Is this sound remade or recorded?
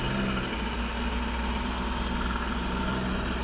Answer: recorded